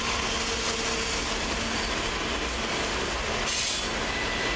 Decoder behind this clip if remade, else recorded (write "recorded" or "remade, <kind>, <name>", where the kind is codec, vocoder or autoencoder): recorded